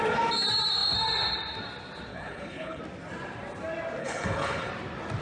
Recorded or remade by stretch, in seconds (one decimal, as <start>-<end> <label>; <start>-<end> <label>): 0.0-2.1 recorded; 2.1-2.8 remade; 2.8-4.0 recorded; 4.0-4.7 remade; 4.7-5.2 recorded